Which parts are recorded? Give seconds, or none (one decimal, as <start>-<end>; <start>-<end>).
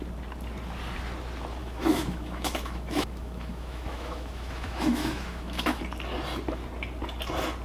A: 0.0-1.6; 5.8-7.6